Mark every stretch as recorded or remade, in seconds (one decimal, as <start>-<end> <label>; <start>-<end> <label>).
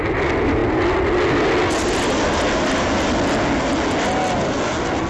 0.0-5.1 recorded